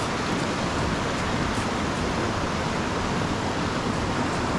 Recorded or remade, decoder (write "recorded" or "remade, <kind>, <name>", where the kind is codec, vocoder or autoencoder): recorded